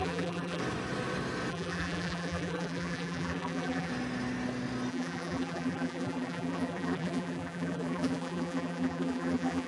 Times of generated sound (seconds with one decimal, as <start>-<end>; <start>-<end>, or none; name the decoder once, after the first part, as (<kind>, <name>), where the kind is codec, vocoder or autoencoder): 0.0-0.6 (vocoder, BigVGAN v2); 1.5-3.9; 4.9-9.7